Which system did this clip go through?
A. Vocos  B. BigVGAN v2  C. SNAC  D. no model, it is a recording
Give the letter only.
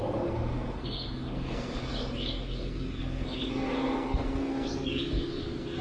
C